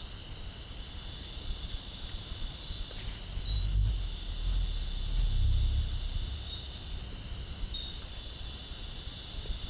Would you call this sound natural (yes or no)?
yes